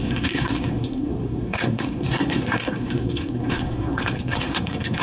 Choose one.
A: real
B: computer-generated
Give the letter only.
B